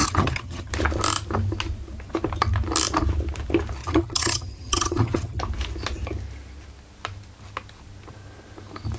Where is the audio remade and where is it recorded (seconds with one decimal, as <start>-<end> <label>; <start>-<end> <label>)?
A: 0.0-0.7 remade; 0.7-3.8 recorded; 3.8-5.4 remade; 5.4-9.0 recorded